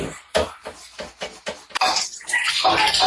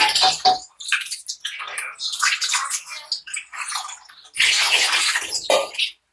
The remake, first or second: first